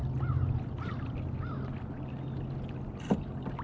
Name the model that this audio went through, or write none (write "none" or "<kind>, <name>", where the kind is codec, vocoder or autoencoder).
none